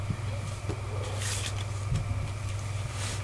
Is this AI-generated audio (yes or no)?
no